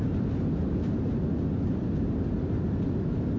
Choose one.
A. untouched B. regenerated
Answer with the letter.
A